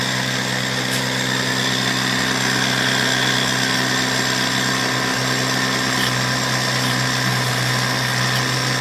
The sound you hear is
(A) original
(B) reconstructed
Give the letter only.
A